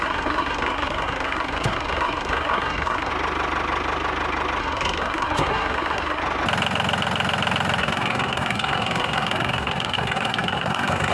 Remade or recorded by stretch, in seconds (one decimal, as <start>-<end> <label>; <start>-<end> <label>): 0.0-3.1 remade; 3.1-4.6 recorded; 4.6-6.2 remade; 6.2-7.8 recorded; 7.8-11.1 remade

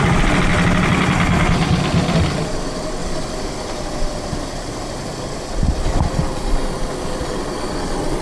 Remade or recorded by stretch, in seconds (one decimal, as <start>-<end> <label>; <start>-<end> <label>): 0.0-8.2 recorded